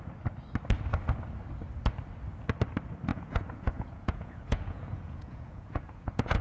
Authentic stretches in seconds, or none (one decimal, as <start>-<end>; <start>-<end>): 0.0-3.1